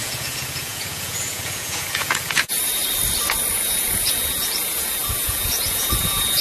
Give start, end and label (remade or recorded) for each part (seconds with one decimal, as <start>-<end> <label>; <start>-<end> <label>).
0.0-2.8 remade; 2.8-3.5 recorded; 3.5-6.4 remade